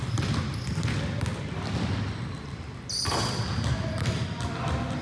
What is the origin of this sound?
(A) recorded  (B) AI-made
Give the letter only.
A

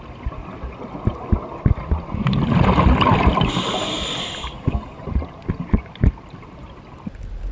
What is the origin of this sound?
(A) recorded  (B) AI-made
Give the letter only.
A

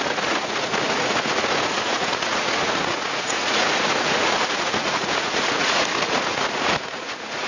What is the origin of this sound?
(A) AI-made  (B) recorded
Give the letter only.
A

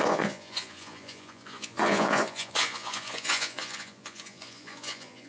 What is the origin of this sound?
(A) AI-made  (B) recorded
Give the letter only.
A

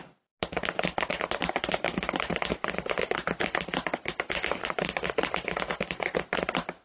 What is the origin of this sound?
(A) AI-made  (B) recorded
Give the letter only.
B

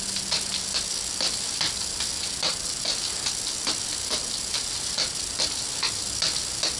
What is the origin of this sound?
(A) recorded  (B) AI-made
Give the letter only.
A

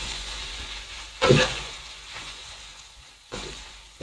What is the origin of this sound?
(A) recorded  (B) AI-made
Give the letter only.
B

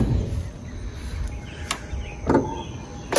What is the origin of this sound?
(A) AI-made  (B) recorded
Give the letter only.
B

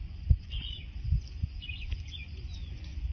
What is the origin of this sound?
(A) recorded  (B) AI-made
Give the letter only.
B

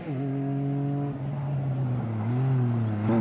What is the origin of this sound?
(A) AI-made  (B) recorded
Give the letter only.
B